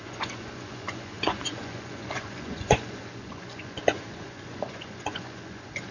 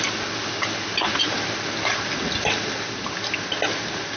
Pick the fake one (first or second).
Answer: first